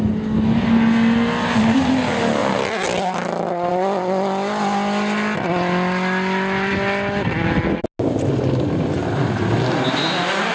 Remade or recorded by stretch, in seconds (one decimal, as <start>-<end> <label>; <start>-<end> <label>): 0.0-10.5 recorded